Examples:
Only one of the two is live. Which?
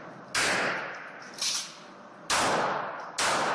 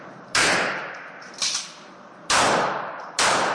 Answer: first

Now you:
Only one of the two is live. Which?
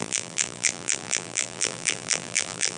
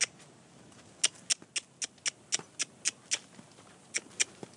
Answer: second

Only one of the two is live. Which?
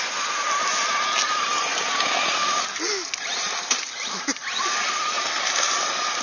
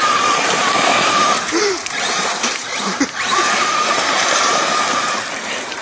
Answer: first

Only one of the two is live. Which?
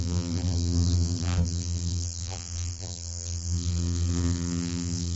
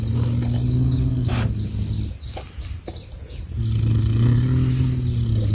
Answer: second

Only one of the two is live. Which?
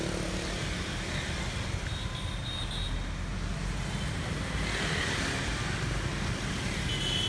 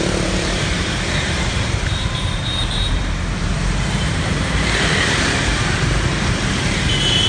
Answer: first